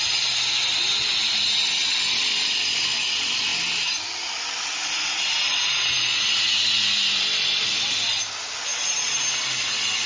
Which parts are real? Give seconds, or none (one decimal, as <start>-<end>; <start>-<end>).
0.0-10.1